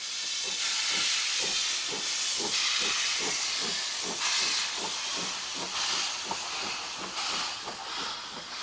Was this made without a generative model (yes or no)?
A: yes